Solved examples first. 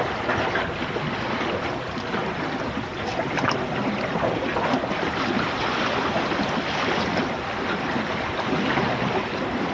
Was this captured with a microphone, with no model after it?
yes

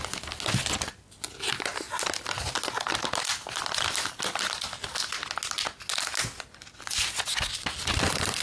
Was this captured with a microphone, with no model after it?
yes